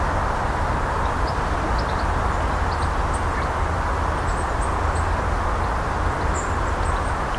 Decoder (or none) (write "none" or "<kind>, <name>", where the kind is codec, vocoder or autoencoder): none